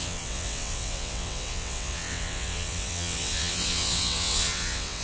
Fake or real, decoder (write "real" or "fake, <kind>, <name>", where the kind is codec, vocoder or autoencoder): fake, vocoder, WaveNeXt